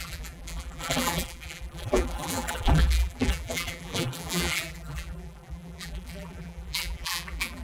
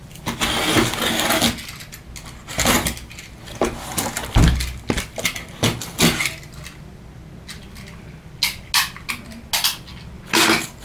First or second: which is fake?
first